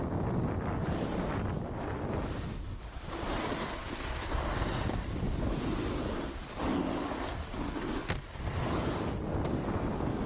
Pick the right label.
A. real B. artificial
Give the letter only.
B